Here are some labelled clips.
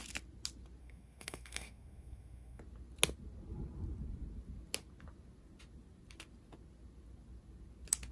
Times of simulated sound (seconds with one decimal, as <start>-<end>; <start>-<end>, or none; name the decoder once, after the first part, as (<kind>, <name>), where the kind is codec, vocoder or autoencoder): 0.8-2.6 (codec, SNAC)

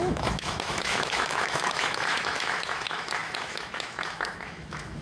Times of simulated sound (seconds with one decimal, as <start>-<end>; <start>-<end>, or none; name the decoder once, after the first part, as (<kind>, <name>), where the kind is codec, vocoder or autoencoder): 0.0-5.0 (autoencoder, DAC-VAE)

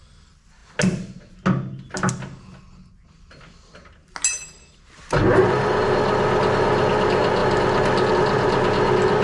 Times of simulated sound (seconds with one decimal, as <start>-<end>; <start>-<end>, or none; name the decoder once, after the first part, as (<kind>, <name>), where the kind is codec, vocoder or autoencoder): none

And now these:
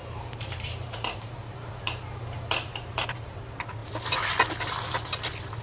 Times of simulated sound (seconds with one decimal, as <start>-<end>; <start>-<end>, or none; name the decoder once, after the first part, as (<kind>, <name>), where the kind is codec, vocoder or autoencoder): 0.0-3.4 (vocoder, BigVGAN v2)

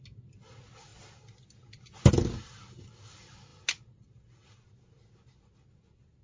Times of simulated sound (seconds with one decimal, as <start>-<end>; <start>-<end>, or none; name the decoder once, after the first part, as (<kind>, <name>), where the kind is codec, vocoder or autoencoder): none

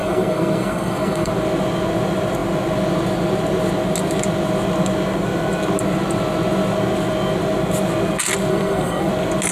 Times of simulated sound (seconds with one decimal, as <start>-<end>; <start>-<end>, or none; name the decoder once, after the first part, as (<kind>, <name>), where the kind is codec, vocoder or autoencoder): 0.0-1.3 (codec, SNAC); 8.5-9.1

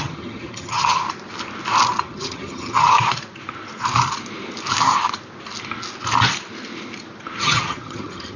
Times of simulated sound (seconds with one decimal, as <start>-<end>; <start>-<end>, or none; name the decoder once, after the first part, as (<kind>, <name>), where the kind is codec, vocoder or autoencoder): 0.0-1.0 (vocoder, HiFi-GAN); 2.0-3.0; 7.4-8.4

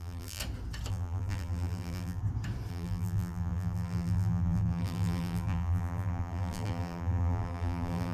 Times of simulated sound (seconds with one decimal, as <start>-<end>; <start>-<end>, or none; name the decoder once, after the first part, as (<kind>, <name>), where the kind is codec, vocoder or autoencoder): 0.0-0.4 (vocoder, BigVGAN v2); 0.9-2.2; 2.7-8.1